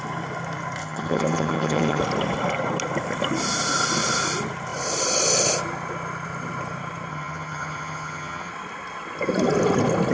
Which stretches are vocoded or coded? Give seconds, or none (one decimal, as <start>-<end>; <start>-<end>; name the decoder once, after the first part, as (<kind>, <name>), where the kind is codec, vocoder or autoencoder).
0.8-2.0 (vocoder, HiFi-GAN); 7.1-8.5